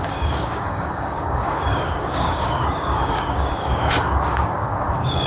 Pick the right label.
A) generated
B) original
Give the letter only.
A